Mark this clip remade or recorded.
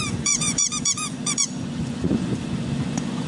remade